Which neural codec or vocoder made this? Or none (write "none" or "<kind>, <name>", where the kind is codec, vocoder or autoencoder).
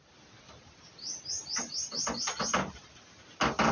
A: none